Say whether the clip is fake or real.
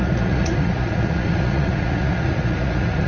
fake